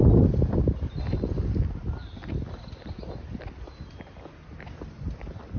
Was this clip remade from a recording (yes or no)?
no